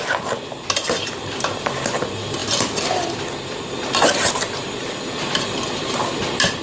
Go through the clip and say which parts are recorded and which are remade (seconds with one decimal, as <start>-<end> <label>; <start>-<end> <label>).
0.0-6.6 recorded